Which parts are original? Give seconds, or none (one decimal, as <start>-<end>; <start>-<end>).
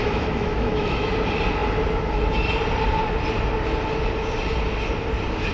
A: 1.1-5.5